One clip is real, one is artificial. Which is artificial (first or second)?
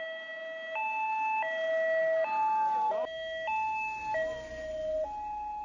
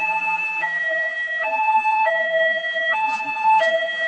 second